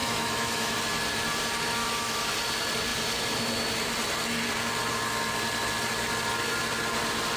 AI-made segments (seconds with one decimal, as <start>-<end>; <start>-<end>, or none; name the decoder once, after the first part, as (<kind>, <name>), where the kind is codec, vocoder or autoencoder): 0.0-0.8 (autoencoder, DAC-VAE); 1.8-2.3